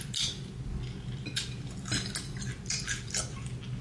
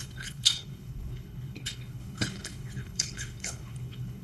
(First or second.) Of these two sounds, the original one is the first